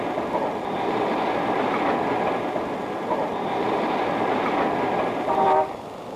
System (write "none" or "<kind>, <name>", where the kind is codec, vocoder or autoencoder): vocoder, BigVGAN v2